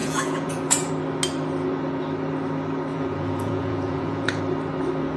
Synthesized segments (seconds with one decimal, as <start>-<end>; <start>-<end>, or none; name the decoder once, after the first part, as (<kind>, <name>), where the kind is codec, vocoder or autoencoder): 0.0-0.9 (vocoder, Vocos); 2.9-4.4